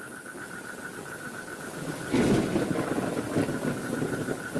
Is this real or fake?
real